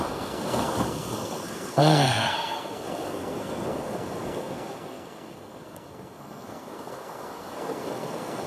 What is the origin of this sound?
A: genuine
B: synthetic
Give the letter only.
B